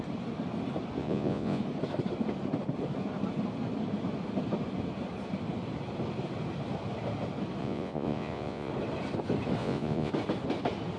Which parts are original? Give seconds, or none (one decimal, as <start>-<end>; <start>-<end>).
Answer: 0.0-1.0; 1.6-7.6; 8.7-9.6; 10.1-11.0